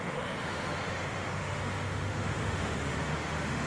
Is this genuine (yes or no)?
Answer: no